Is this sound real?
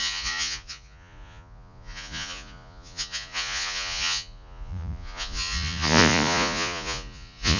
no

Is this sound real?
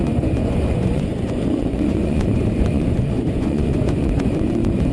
no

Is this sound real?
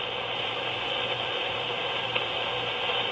yes